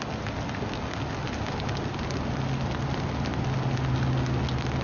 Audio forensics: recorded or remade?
recorded